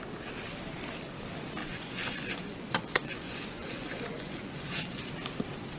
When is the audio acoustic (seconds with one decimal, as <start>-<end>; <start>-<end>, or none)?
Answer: 0.0-1.6; 5.1-5.8